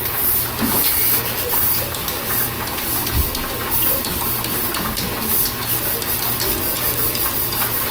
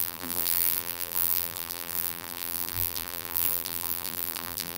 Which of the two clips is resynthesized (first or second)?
second